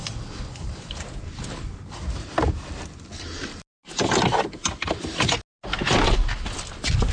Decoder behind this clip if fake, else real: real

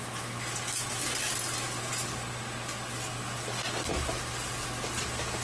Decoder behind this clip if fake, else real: real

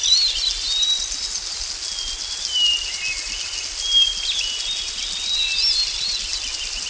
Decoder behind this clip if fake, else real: real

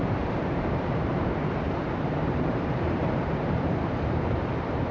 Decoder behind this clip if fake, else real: fake, vocoder, BigVGAN v2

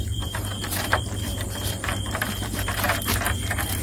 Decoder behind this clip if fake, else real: fake, vocoder, BigVGAN v2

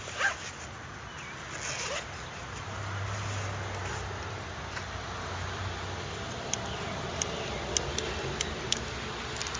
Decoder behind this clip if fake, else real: real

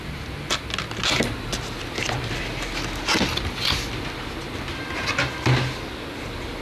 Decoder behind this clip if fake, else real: real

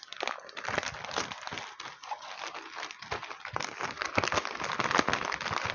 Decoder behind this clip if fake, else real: real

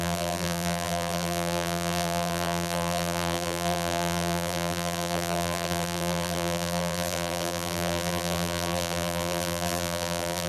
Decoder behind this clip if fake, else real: fake, vocoder, BigVGAN v2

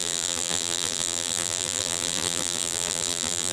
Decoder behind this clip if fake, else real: fake, vocoder, BigVGAN v2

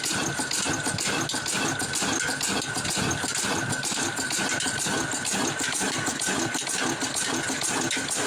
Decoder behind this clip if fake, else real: real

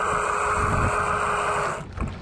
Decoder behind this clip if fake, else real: real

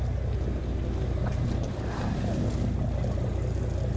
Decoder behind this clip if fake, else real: real